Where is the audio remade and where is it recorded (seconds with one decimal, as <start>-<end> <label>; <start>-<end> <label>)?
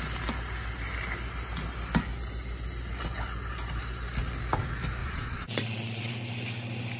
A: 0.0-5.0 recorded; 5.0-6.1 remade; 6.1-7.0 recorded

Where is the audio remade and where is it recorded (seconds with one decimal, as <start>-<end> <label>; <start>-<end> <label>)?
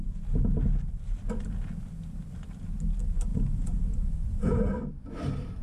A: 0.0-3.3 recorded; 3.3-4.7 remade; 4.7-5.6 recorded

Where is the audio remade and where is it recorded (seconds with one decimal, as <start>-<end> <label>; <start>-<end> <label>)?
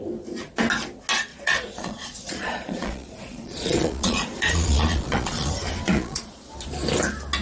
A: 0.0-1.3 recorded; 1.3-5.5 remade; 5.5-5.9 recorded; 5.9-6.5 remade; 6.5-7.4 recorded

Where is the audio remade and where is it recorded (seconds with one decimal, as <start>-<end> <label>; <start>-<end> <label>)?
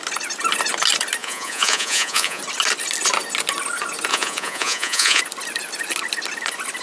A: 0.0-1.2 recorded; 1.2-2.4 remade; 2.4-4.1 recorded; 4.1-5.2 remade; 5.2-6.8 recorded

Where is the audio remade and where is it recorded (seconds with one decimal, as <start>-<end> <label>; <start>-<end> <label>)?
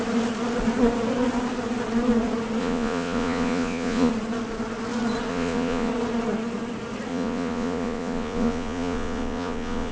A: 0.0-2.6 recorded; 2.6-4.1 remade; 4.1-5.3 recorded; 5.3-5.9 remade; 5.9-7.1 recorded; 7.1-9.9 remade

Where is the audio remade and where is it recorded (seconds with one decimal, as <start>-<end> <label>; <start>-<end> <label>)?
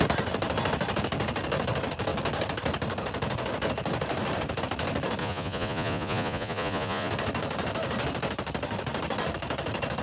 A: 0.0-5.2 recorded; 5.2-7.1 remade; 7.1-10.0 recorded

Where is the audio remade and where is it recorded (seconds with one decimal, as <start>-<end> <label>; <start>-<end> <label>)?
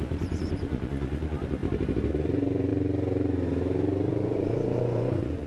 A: 0.0-1.6 remade; 1.6-2.1 recorded; 2.1-2.7 remade; 2.7-4.1 recorded; 4.1-5.5 remade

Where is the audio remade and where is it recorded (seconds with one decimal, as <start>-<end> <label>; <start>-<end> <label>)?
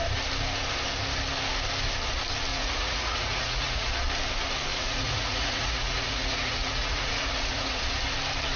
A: 0.0-2.5 recorded; 2.5-3.9 remade; 3.9-4.7 recorded; 4.7-7.8 remade; 7.8-8.6 recorded